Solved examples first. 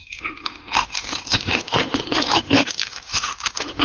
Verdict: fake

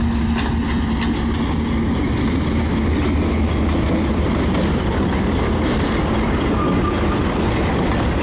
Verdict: real